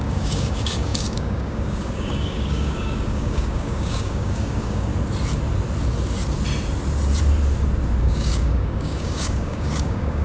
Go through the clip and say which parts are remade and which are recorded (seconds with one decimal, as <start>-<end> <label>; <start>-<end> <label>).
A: 0.0-4.9 remade; 4.9-8.0 recorded; 8.0-10.2 remade